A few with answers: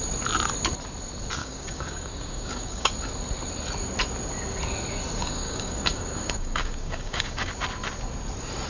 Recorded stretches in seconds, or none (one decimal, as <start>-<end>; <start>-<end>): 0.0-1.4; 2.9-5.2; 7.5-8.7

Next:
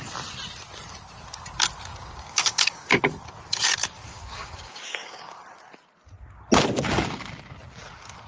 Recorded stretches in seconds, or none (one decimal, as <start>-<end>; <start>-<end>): 0.0-1.9; 3.0-4.1; 5.4-8.3

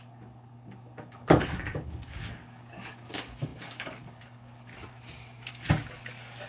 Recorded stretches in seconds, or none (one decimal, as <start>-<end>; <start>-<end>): 4.7-5.5

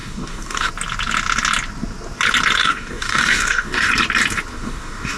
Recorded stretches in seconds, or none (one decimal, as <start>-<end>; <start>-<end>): 0.7-2.6; 3.9-4.5

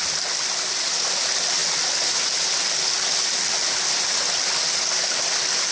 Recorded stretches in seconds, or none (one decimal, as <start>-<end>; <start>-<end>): 0.0-5.7

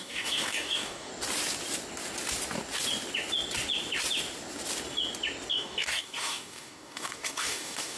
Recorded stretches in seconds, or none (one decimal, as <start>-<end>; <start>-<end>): 1.1-5.5

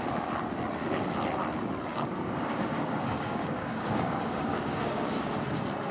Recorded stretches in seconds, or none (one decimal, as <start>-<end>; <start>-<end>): 0.0-1.9; 5.4-5.9

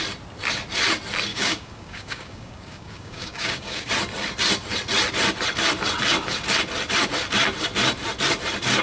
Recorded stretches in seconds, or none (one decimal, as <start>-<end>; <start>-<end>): 0.0-1.3; 3.9-8.8